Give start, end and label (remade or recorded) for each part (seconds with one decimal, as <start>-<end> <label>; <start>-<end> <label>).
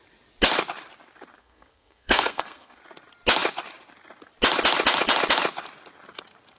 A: 0.0-1.4 recorded; 1.4-2.8 remade; 2.8-6.6 recorded